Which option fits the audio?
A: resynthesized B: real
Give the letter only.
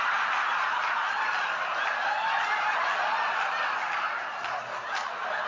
B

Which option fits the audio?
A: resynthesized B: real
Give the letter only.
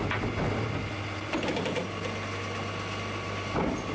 B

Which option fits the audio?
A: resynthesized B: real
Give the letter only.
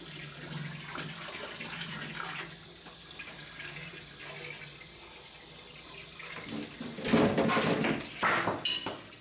B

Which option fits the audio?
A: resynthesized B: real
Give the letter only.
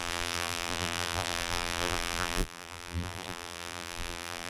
A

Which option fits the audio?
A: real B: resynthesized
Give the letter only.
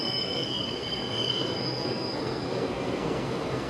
B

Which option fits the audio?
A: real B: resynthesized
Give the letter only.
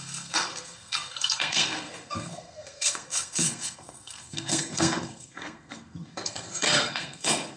B